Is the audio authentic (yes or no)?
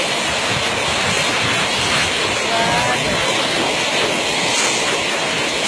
yes